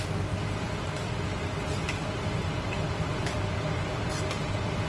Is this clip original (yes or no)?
yes